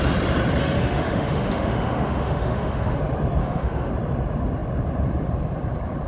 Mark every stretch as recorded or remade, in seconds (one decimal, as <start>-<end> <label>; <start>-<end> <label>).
0.0-0.6 recorded; 0.6-3.0 remade; 3.0-3.4 recorded; 3.4-3.9 remade; 3.9-6.1 recorded